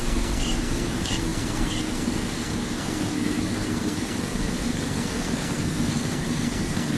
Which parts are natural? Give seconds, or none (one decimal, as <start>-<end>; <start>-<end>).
none